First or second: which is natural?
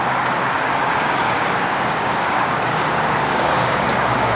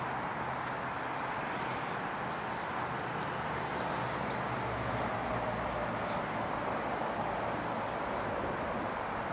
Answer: second